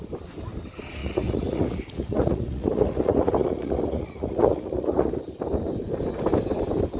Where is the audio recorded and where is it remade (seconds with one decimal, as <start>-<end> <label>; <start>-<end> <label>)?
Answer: 0.0-1.0 recorded; 1.0-5.2 remade; 5.2-7.0 recorded